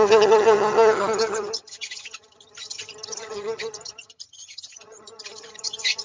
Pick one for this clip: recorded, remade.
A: remade